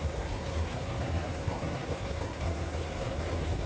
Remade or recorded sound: remade